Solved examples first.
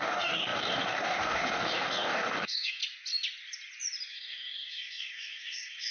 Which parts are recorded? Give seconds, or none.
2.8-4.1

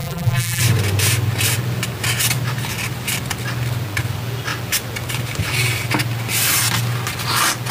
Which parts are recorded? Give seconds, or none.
0.6-7.7

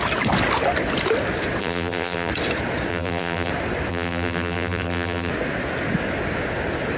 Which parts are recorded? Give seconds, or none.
0.0-1.6; 2.3-2.9; 3.5-3.9; 5.3-7.0